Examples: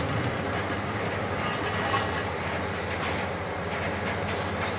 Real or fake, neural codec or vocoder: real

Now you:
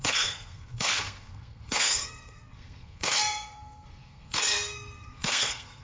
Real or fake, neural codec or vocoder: fake, codec, SNAC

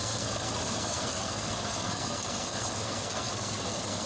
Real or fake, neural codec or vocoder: fake, codec, SNAC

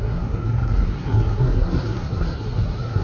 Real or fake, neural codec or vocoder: fake, codec, SNAC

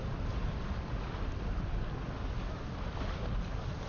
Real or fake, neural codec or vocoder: real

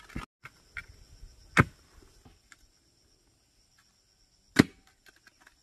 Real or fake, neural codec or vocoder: real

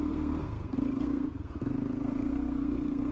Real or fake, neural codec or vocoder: fake, codec, SNAC